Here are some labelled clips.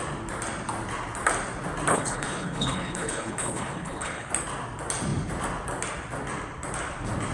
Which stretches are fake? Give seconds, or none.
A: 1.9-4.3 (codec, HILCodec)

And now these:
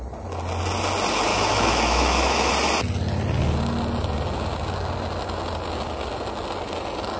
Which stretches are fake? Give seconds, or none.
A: 1.3-2.5 (autoencoder, DAC-VAE)

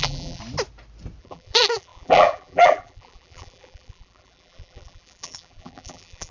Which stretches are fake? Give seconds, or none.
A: 0.0-0.4 (vocoder, BigVGAN v2); 1.2-6.3

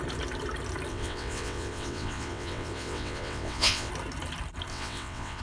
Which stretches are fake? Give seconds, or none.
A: 0.9-3.9 (vocoder, WaveNeXt); 4.7-5.4

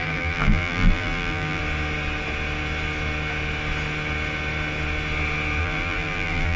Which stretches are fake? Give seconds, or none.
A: 0.0-1.6 (vocoder, BigVGAN v2); 5.6-6.6

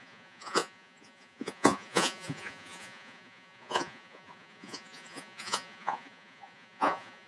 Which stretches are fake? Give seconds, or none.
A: 0.0-7.3 (vocoder, Vocos)